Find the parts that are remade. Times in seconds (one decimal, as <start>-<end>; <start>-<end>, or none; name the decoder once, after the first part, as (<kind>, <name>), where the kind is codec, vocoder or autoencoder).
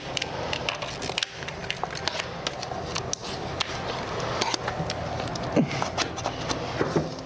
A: none